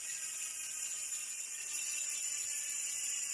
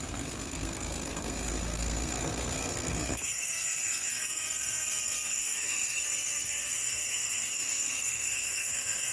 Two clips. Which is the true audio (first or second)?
first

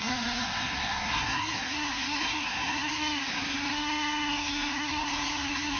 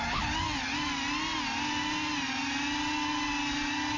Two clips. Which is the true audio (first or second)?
second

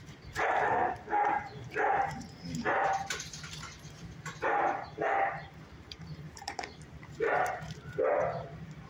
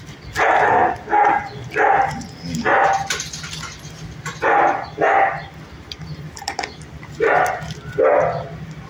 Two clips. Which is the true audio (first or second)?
second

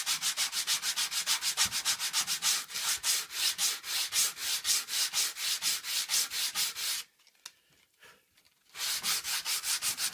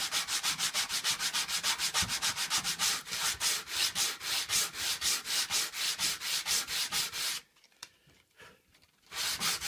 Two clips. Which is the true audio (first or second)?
first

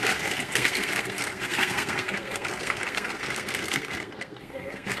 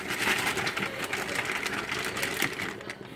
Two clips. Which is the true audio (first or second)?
second